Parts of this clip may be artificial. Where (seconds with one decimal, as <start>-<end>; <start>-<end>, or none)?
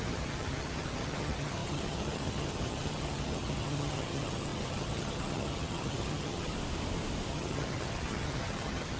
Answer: 0.0-6.5; 7.3-9.0